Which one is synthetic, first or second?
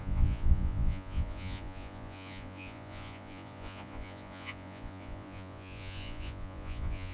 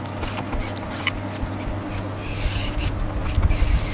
first